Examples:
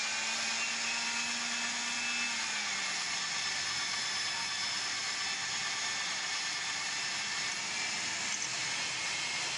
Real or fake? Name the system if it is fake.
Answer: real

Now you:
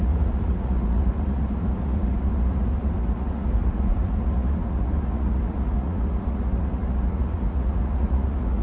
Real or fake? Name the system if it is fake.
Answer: fake, vocoder, Vocos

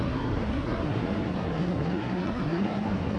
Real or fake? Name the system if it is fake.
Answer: fake, codec, SNAC